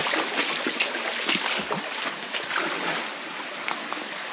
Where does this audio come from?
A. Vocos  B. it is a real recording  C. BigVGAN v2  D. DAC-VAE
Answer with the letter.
B